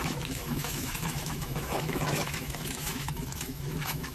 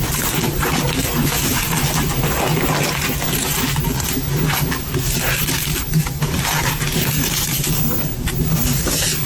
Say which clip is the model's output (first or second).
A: first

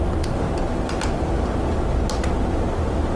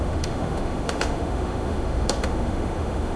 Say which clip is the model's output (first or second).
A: second